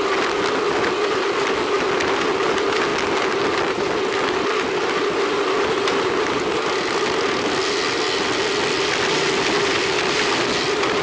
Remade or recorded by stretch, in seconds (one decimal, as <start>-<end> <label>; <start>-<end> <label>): 0.0-11.0 recorded